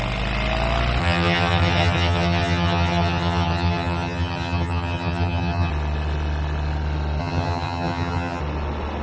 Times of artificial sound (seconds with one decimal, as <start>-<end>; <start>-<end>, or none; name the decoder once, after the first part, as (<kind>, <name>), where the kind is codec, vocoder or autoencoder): 1.0-5.7 (vocoder, HiFi-GAN); 7.2-8.4